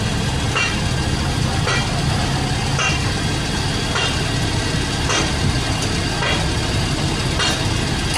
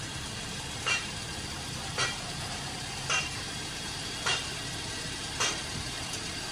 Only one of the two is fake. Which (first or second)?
second